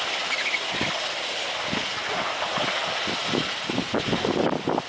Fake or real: real